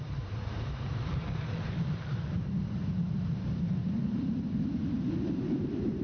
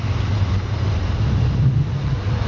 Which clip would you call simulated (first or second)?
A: first